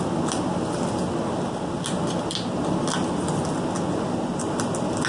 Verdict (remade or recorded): recorded